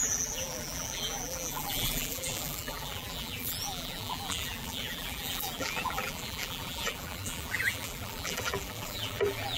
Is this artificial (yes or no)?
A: yes